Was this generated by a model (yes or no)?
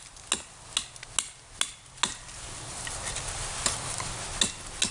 no